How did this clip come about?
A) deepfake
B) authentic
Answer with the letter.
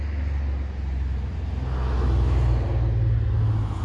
B